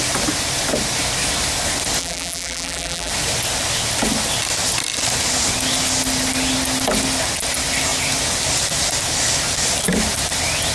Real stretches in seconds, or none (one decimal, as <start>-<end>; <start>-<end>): 0.0-2.0; 3.1-10.7